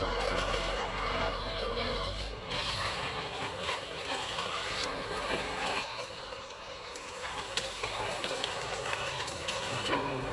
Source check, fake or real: fake